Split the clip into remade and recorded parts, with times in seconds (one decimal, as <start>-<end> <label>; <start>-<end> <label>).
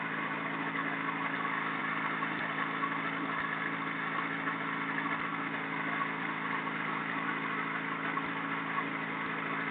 0.0-9.7 recorded